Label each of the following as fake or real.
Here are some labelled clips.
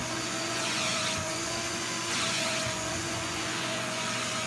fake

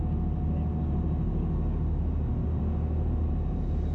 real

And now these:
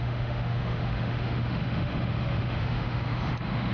fake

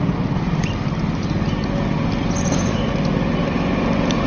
real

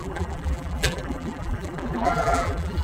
fake